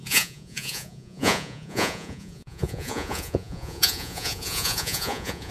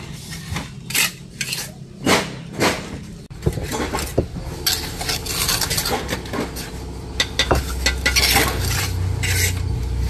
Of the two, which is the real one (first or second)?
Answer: second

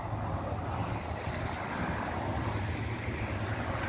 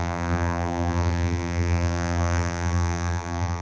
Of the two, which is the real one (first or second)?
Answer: first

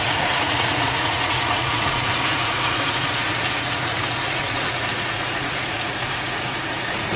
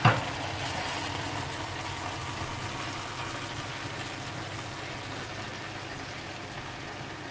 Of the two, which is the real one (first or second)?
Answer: second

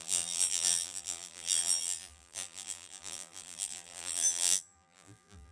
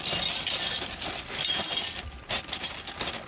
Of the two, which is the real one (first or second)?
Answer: second